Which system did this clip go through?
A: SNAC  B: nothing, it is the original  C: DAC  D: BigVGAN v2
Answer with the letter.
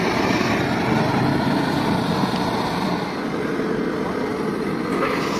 B